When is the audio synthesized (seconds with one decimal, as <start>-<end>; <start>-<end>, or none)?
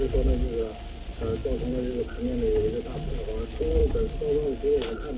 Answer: none